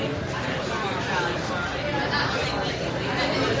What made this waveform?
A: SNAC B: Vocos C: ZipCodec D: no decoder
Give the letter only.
D